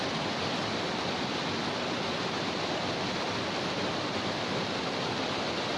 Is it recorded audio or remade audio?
recorded